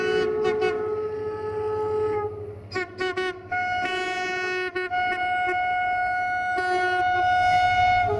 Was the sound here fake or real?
real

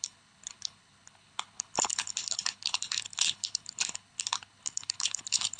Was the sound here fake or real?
fake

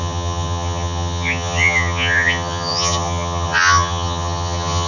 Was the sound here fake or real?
fake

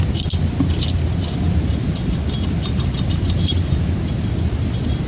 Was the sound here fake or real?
real